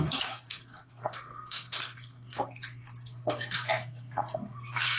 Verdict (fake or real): fake